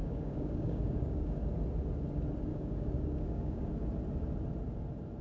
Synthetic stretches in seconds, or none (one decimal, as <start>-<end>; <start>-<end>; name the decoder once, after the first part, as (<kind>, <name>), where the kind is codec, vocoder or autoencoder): 0.0-1.4 (codec, DAC); 2.5-3.7